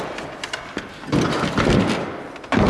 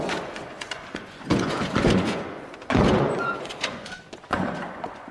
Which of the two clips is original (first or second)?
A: first